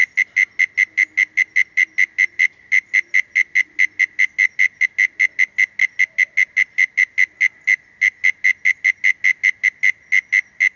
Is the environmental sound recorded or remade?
recorded